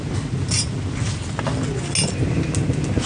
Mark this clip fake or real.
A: real